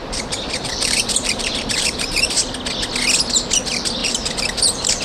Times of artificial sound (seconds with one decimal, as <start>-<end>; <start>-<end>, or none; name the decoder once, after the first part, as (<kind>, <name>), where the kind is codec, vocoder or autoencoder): 0.0-2.3 (vocoder, BigVGAN v2); 4.0-5.0